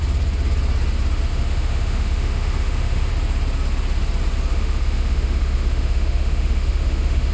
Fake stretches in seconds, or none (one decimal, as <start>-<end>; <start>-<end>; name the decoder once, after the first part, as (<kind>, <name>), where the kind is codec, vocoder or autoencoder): 1.3-3.1 (autoencoder, DAC-VAE); 4.5-7.3